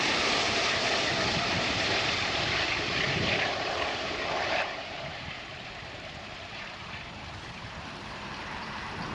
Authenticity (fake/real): fake